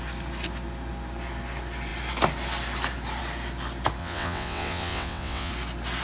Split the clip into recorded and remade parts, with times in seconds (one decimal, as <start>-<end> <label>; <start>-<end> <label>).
0.0-4.0 recorded; 4.0-5.5 remade; 5.5-6.0 recorded

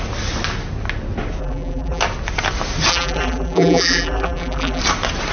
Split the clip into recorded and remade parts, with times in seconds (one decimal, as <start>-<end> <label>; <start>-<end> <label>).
0.0-1.4 recorded; 1.4-2.0 remade; 2.0-2.9 recorded; 2.9-4.8 remade; 4.8-5.3 recorded

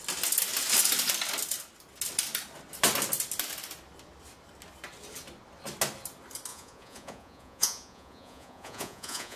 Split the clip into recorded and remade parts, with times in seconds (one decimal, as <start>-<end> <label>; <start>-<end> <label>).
0.0-6.5 recorded; 6.5-9.4 remade

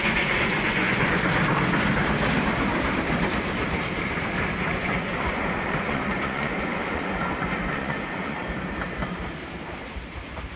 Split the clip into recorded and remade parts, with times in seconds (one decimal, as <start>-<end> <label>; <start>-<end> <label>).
0.0-1.1 remade; 1.1-4.7 recorded; 4.7-8.4 remade; 8.4-10.6 recorded

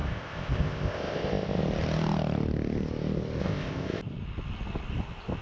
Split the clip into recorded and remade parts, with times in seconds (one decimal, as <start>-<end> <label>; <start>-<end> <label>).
0.0-1.6 remade; 1.6-3.4 recorded; 3.4-4.0 remade; 4.0-5.4 recorded

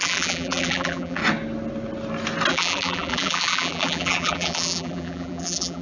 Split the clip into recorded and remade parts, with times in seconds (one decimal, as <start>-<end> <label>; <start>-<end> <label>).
0.0-1.2 remade; 1.2-2.5 recorded; 2.5-5.8 remade